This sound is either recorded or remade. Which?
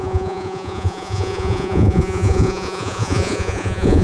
remade